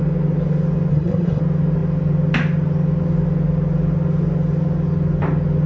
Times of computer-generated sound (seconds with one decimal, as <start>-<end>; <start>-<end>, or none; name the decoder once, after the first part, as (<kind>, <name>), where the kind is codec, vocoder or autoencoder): 0.9-1.4 (codec, SNAC)